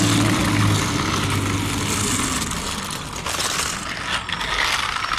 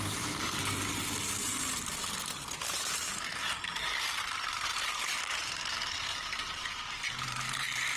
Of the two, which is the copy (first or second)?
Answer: second